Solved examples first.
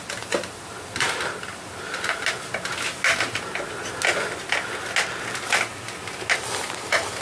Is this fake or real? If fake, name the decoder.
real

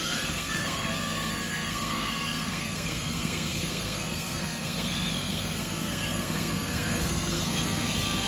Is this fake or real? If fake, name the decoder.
fake, codec, SNAC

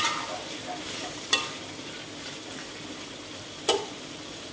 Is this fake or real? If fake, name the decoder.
real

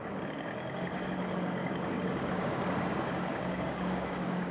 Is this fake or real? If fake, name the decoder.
fake, codec, DAC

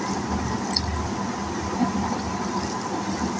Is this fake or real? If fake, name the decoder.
real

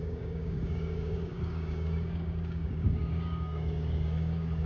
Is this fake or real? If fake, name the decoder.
fake, codec, DAC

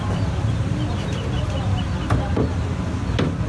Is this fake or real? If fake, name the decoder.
real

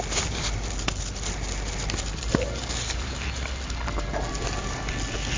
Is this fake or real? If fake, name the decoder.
real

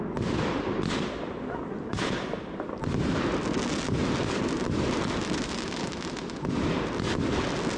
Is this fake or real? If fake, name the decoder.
real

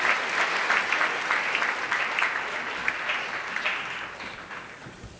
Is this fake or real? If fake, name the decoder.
real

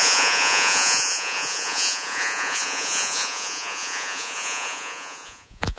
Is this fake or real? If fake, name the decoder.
fake, vocoder, Vocos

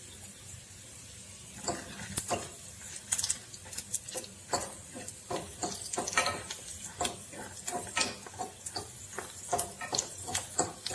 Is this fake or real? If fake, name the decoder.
real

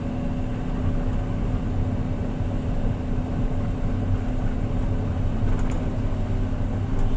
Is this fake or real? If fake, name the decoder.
real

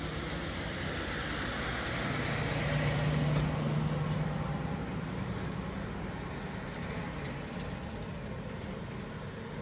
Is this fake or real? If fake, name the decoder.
real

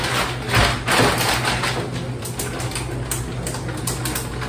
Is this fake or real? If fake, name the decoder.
real